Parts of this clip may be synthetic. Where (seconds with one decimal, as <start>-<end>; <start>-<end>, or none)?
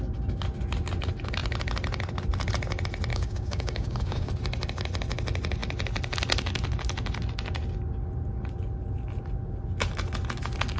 3.1-4.3